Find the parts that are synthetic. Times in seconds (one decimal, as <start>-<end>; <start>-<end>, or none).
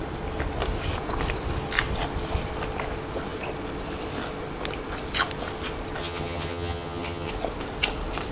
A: 6.0-7.3